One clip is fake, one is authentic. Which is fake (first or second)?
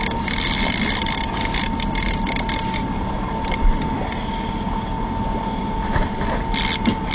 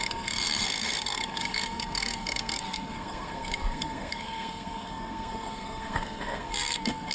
second